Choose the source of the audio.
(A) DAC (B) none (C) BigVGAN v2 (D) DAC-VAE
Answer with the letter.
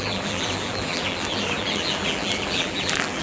C